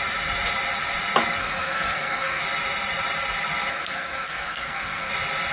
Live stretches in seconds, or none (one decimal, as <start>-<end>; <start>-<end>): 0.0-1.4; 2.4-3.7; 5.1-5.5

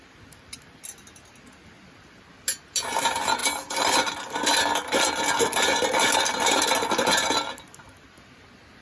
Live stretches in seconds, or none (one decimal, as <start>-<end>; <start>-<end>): 0.0-8.8

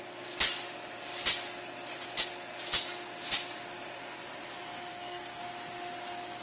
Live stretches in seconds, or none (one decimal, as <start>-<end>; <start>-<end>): 0.0-4.9; 5.4-6.4